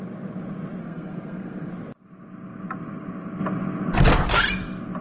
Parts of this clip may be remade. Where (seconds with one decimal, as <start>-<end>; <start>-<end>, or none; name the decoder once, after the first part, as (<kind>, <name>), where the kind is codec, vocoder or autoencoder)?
0.8-1.7 (codec, SNAC)